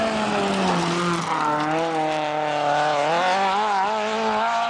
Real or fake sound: real